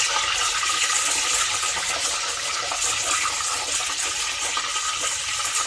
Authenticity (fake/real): real